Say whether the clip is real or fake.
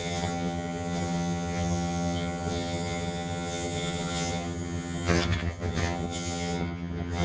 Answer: fake